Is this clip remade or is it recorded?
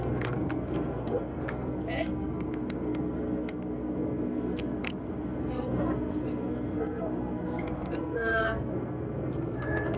remade